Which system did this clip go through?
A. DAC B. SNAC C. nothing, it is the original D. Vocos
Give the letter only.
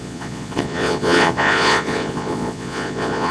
D